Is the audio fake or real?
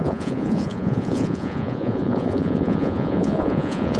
fake